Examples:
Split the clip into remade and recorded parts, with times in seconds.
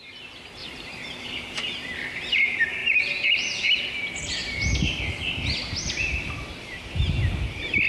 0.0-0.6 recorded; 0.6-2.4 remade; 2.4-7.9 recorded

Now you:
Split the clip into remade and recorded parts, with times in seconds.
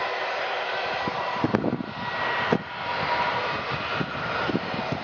0.0-3.9 recorded; 3.9-5.0 remade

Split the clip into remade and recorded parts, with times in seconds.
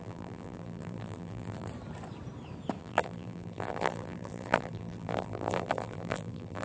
0.0-1.7 remade; 1.7-2.8 recorded; 2.8-6.6 remade